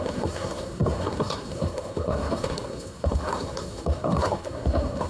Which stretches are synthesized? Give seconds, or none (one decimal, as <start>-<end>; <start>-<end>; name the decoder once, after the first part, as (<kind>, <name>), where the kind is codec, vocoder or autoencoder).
0.0-5.1 (codec, SNAC)